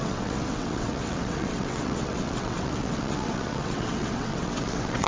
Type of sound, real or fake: fake